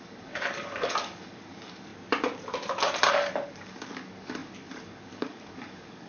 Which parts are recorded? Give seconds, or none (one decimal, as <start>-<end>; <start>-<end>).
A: 1.9-3.1